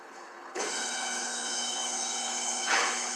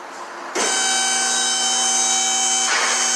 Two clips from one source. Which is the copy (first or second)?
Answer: first